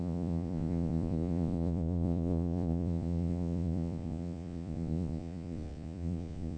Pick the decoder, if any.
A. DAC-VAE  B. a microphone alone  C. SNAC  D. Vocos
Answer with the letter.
D